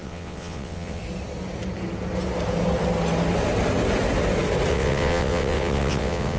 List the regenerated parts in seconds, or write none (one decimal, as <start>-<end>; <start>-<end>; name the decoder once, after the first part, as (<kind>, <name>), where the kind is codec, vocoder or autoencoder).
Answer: 0.0-1.0 (vocoder, WaveNeXt); 4.7-6.4